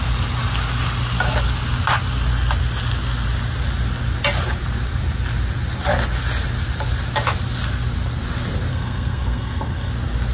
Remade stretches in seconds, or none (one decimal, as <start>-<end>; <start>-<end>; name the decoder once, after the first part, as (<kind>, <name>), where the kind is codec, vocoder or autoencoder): 8.7-9.9 (codec, SNAC)